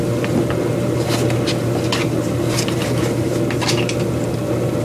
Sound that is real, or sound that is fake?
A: real